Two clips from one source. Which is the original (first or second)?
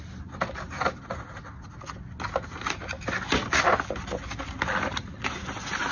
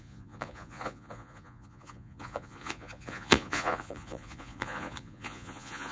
first